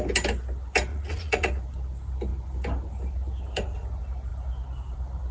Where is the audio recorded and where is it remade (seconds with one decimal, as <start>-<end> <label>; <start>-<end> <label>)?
0.0-0.9 recorded; 0.9-1.6 remade; 1.6-5.3 recorded